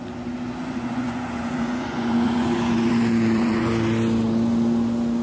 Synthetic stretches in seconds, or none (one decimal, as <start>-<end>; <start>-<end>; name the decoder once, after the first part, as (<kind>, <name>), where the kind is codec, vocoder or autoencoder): 0.6-3.7 (vocoder, Vocos)